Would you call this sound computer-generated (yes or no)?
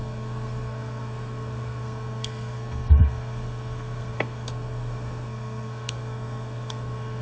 yes